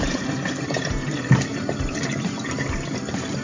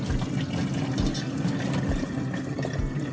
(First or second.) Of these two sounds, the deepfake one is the first